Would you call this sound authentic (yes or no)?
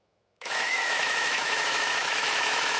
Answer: no